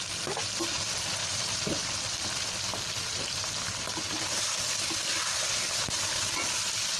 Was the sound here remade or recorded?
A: recorded